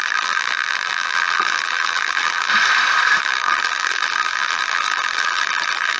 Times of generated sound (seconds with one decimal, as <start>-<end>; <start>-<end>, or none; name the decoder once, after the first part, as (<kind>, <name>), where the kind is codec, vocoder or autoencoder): 0.0-2.5 (vocoder, BigVGAN v2); 3.2-6.0